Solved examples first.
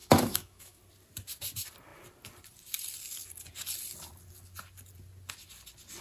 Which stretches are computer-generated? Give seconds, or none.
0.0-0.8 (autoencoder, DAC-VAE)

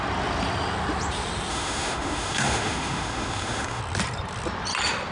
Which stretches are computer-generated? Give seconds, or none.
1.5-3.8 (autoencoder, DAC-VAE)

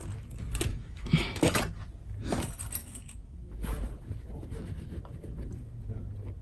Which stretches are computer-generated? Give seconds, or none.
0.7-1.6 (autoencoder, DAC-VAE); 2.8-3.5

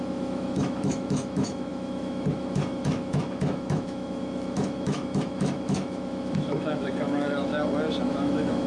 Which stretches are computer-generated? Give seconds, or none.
0.0-7.5 (autoencoder, DAC-VAE); 8.1-8.7

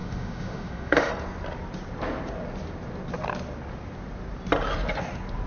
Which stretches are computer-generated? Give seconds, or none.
0.0-1.1 (autoencoder, DAC-VAE)

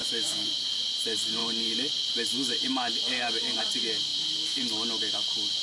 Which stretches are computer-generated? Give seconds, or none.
0.0-0.5 (autoencoder, DAC-VAE)

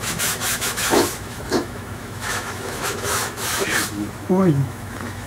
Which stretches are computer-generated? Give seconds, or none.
0.0-5.3 (autoencoder, DAC-VAE)